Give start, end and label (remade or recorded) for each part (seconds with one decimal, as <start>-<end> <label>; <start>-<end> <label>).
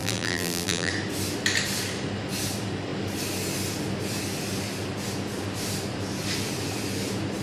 0.0-0.9 remade; 0.9-7.4 recorded